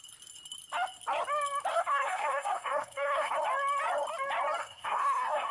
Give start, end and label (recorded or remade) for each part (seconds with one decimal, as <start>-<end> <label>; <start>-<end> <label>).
0.0-1.7 recorded; 1.7-3.3 remade; 3.3-4.6 recorded; 4.6-5.5 remade